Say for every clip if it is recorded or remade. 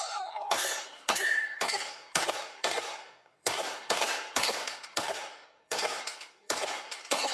remade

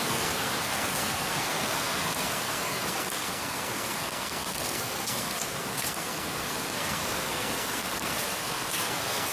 remade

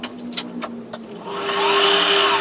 recorded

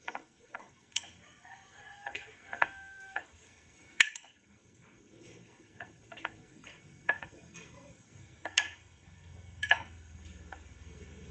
remade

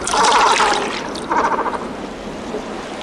recorded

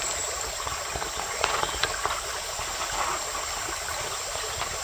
remade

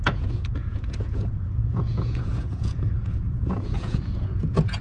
remade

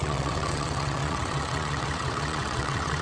remade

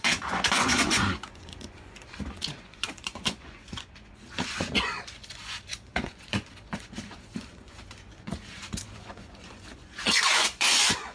remade